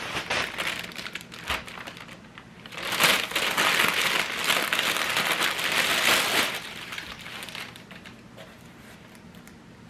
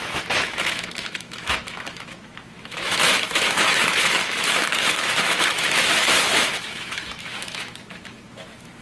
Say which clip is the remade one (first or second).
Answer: second